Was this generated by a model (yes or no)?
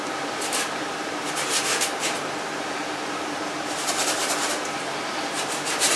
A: yes